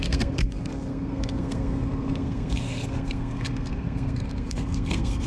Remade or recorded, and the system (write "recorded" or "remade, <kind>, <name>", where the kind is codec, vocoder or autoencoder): remade, codec, SNAC